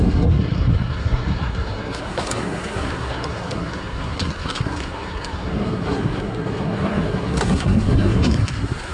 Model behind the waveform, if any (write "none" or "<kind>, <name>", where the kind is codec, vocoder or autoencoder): codec, SNAC